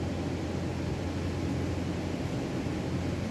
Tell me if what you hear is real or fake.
real